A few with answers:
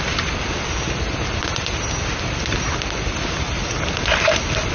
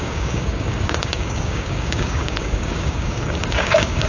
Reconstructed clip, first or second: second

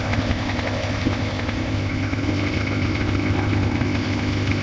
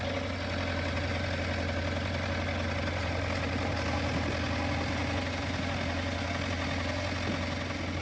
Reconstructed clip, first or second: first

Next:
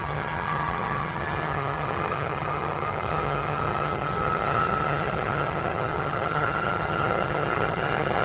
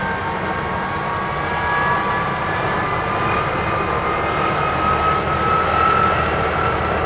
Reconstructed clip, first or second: first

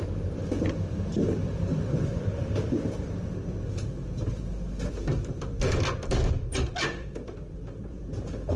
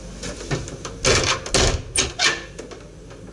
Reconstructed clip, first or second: first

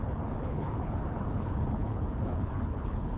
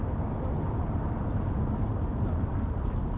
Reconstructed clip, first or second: first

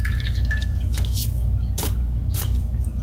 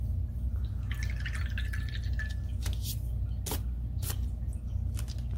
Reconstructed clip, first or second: first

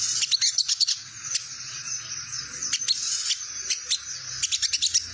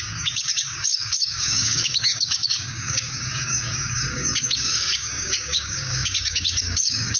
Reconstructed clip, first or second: second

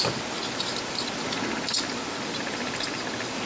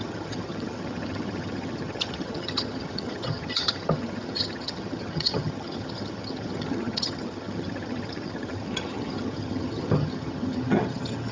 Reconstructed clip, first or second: second